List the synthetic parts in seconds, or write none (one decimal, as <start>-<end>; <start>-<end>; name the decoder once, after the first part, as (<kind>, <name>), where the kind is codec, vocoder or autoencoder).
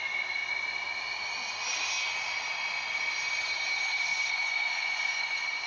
4.1-5.7 (vocoder, Vocos)